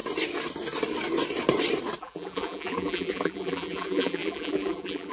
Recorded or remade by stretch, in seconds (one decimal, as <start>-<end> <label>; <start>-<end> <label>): 0.0-2.0 recorded; 2.0-5.1 remade